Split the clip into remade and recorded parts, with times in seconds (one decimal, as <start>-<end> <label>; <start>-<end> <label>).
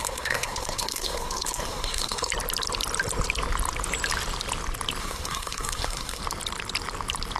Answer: 0.0-2.3 remade; 2.3-5.0 recorded; 5.0-6.2 remade; 6.2-7.4 recorded